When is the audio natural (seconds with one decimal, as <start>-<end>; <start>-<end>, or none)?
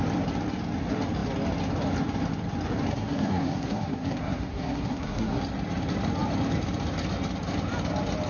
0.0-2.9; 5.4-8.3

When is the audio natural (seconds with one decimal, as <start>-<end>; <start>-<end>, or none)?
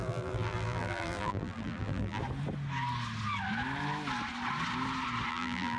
2.2-5.3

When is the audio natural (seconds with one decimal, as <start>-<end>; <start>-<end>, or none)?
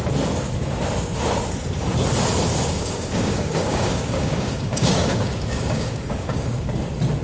0.0-2.5; 6.7-7.2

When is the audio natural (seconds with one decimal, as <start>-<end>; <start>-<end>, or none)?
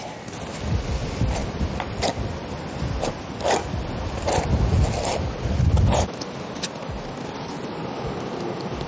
0.0-1.4; 5.7-8.9